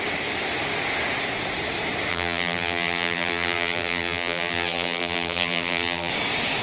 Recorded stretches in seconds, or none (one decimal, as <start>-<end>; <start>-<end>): 0.0-2.1; 6.1-6.6